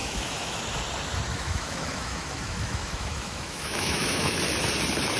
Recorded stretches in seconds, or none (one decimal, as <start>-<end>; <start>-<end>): 0.6-1.3; 4.4-5.2